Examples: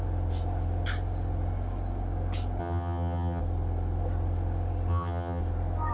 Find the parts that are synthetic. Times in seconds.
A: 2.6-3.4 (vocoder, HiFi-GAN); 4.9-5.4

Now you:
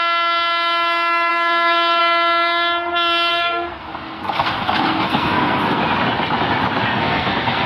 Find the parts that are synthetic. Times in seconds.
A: 1.3-2.0 (codec, SNAC); 3.3-5.8; 6.9-7.7

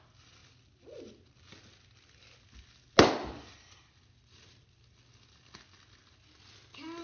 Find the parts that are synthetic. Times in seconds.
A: none

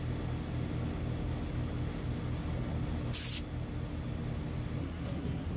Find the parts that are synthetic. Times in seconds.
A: 4.8-5.6 (codec, SNAC)

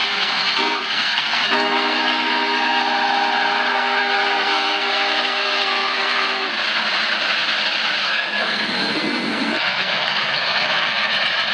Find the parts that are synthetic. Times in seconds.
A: 0.0-2.8 (codec, SNAC); 3.7-6.5; 8.0-11.1

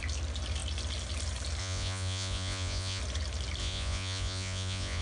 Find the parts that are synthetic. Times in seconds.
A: 1.6-3.0 (vocoder, Vocos); 3.6-5.0

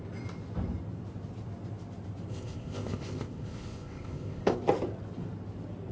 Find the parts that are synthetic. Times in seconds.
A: 2.3-4.5 (codec, ZipCodec)